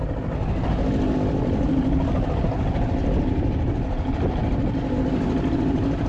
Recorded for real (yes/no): yes